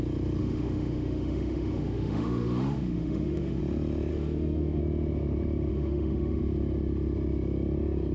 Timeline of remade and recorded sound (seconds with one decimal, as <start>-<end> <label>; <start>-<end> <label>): 0.0-0.4 recorded; 0.4-3.6 remade; 3.6-4.1 recorded; 4.1-4.8 remade; 4.8-5.7 recorded; 5.7-6.4 remade; 6.4-8.1 recorded